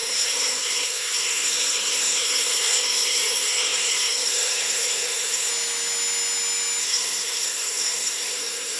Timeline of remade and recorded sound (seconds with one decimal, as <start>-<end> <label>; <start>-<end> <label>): 0.0-5.5 remade; 5.5-6.8 recorded; 6.8-8.8 remade